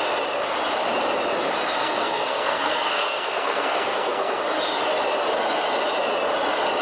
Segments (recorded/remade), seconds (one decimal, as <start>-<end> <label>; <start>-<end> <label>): 0.0-1.8 recorded; 1.8-4.4 remade; 4.4-6.8 recorded